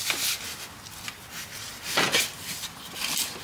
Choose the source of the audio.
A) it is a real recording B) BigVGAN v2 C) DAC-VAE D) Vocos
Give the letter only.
A